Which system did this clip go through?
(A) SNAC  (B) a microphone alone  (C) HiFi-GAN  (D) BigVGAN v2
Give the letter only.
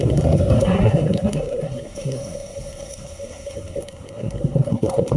A